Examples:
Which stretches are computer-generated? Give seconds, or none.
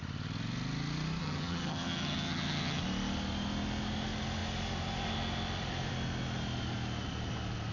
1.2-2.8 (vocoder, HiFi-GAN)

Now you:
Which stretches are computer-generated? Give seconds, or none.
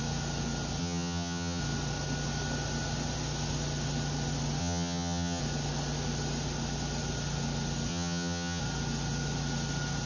0.8-1.6 (vocoder, HiFi-GAN); 4.6-5.4; 7.9-8.6